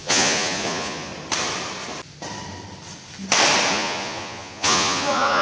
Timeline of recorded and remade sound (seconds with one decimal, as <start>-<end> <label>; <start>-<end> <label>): 0.0-1.1 remade; 1.1-3.7 recorded; 3.7-5.4 remade